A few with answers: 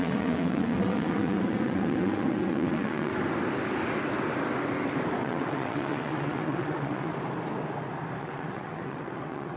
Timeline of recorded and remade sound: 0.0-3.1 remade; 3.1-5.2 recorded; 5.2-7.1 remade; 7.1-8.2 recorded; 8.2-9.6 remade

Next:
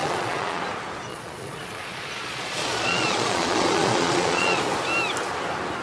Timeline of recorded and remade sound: 0.0-0.6 remade; 0.6-1.1 recorded; 1.1-4.6 remade; 4.6-5.8 recorded

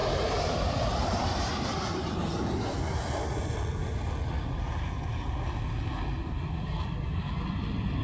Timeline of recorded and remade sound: 0.0-4.1 remade; 4.1-6.2 recorded; 6.2-7.3 remade; 7.3-8.0 recorded

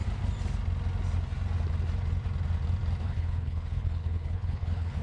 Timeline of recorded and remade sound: 0.0-3.0 recorded; 3.0-5.0 remade

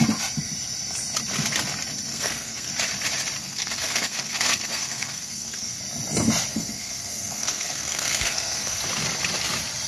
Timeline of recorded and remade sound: 0.0-2.1 recorded; 2.1-2.7 remade; 2.7-3.4 recorded; 3.4-5.8 remade; 5.8-6.5 recorded; 6.5-8.8 remade; 8.8-9.9 recorded